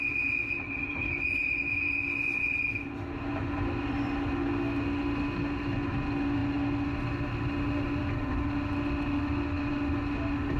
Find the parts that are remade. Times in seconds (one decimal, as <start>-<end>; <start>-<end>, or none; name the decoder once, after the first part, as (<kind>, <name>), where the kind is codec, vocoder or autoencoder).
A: none